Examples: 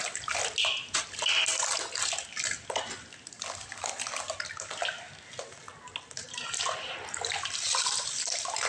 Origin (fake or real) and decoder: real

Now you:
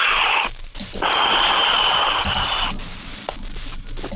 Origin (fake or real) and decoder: real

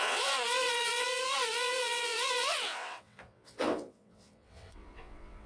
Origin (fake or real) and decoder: fake, vocoder, WaveNeXt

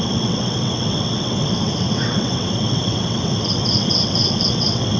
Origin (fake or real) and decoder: fake, vocoder, WaveNeXt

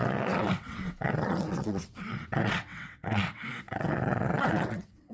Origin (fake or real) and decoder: fake, vocoder, WaveNeXt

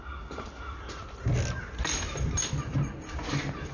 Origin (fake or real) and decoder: real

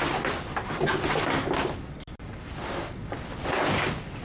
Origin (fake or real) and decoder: real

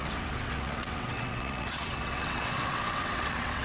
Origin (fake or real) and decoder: fake, vocoder, WaveNeXt